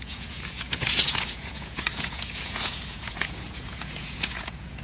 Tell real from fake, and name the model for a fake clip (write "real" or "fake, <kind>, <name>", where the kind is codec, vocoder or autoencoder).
fake, vocoder, Vocos